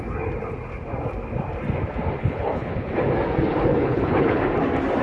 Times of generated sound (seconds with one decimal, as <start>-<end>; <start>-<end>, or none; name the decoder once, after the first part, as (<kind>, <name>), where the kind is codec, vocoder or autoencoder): 2.2-2.9 (codec, HILCodec); 3.5-4.4